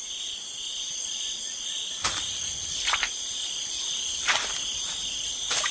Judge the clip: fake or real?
real